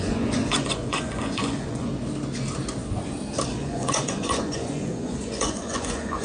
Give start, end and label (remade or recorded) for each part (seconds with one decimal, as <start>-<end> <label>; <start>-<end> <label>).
0.0-1.9 remade; 1.9-3.5 recorded; 3.5-6.2 remade